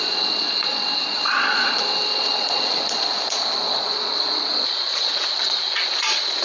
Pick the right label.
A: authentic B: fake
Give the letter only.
B